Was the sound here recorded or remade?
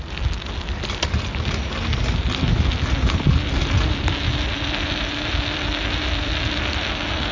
recorded